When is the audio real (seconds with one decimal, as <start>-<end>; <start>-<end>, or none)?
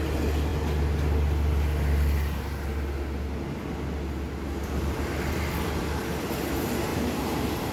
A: 0.0-6.9